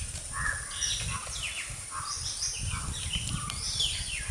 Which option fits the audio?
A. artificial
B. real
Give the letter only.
B